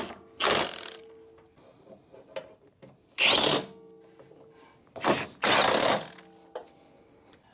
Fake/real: real